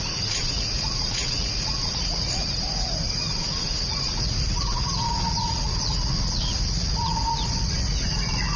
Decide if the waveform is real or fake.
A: fake